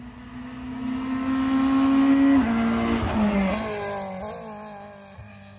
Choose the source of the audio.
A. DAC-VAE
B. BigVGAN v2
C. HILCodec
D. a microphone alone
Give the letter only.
D